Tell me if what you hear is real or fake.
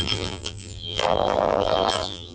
fake